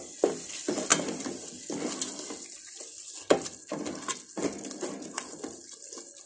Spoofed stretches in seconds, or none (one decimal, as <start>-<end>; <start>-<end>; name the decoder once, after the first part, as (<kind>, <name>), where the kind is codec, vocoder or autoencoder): none